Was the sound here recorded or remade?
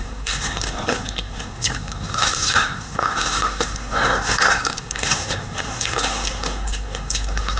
remade